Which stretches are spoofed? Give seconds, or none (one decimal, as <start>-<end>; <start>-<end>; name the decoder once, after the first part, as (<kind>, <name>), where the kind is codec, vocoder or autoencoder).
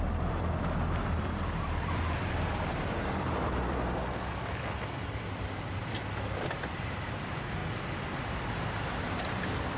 0.0-7.6 (vocoder, BigVGAN v2); 8.2-9.8